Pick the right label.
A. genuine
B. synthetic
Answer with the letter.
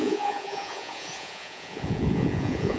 B